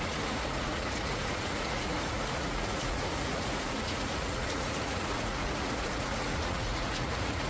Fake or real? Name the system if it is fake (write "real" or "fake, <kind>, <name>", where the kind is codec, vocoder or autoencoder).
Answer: fake, vocoder, Vocos